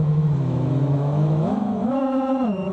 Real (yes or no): no